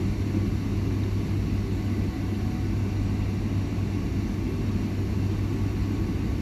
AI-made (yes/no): no